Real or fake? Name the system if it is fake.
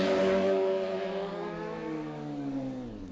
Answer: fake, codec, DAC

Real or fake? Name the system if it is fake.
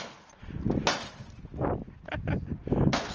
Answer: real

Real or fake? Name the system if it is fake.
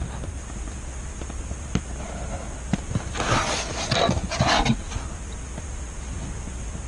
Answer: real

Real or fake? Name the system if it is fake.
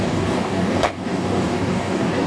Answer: fake, codec, DAC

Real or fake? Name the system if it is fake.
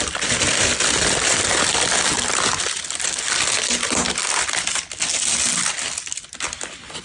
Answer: real